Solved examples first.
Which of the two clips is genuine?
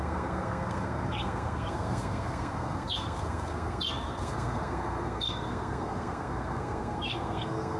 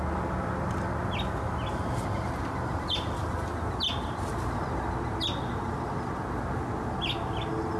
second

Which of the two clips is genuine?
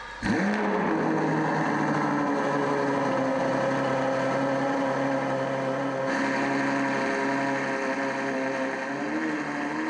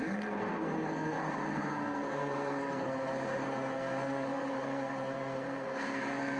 first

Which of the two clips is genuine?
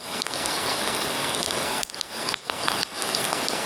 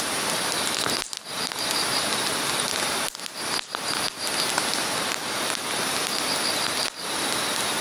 second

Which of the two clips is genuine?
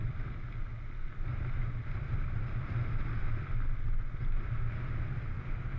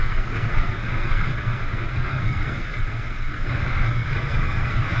first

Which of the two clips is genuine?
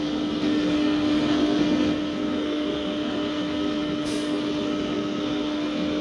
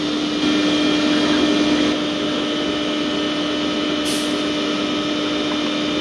second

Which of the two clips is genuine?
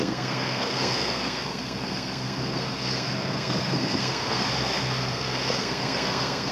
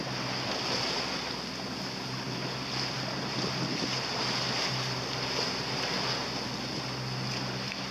second